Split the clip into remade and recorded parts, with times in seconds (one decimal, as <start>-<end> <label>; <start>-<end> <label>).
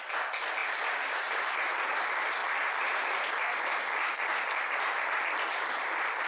0.0-6.3 recorded